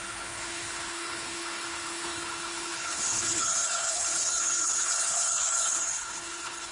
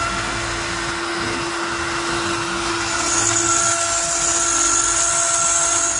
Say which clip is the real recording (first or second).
second